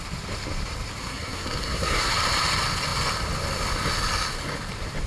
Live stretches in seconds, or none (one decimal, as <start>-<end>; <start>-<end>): 0.0-1.0; 2.1-5.1